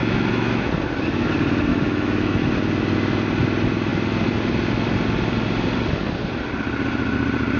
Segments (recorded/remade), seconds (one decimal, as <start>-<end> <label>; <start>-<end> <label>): 0.0-0.7 remade; 0.7-1.7 recorded; 1.7-2.4 remade; 2.4-7.6 recorded